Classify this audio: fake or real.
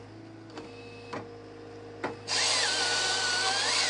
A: real